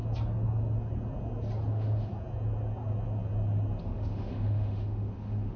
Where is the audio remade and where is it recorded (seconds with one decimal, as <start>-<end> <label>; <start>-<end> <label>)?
0.0-1.7 recorded; 1.7-2.1 remade; 2.1-3.8 recorded; 3.8-5.6 remade